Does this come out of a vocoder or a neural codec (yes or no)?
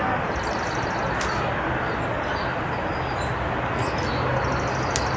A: no